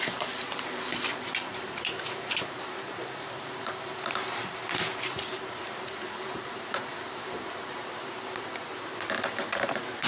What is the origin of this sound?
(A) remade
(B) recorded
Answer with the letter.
A